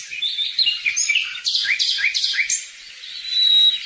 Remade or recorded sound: recorded